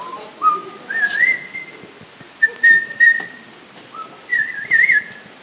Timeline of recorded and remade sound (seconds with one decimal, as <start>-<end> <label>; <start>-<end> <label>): 0.0-4.3 recorded; 4.3-5.0 remade; 5.0-5.4 recorded